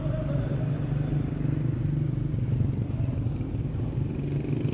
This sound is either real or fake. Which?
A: real